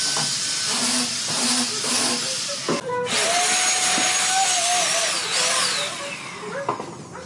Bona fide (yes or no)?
yes